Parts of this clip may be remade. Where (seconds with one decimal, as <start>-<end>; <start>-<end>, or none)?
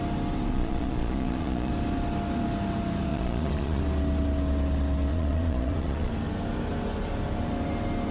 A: 0.5-1.7; 3.1-3.8; 5.1-6.1